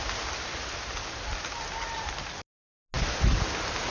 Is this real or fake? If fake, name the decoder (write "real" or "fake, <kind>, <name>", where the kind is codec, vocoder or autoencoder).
real